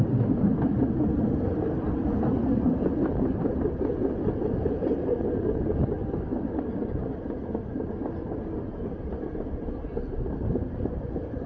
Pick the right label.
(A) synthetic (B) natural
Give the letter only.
B